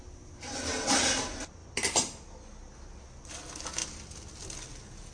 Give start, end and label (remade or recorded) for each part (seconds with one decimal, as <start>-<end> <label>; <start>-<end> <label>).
0.0-5.1 recorded